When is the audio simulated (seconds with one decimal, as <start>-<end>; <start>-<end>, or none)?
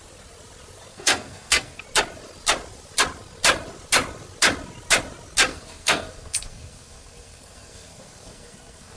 0.9-1.8; 5.5-9.0